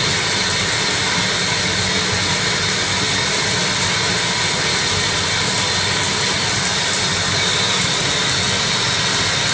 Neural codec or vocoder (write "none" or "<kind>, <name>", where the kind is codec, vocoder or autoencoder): none